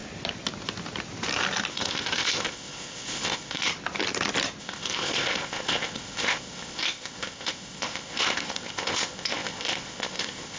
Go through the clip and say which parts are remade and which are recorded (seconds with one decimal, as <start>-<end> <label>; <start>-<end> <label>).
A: 0.0-1.7 recorded; 1.7-3.7 remade; 3.7-4.6 recorded; 4.6-10.6 remade